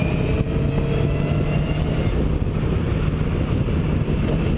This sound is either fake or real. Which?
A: real